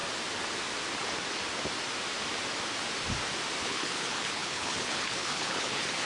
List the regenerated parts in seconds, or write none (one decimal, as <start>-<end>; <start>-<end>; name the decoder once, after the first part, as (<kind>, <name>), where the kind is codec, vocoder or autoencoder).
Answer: 3.6-6.0 (codec, HILCodec)